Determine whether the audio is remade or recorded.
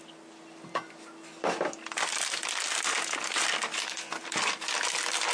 recorded